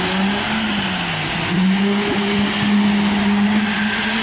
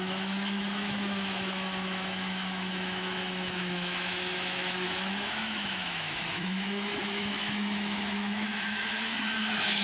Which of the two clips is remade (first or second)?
second